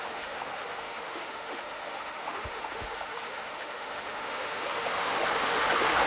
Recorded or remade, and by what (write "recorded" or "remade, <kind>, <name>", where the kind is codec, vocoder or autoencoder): remade, autoencoder, DAC-VAE